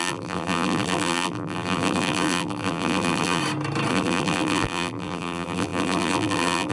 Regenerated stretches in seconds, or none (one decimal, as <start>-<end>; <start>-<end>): 0.0-3.4; 3.9-6.7